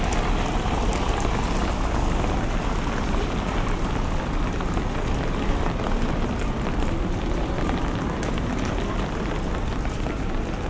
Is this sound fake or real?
real